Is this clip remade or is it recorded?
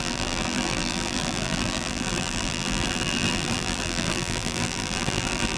remade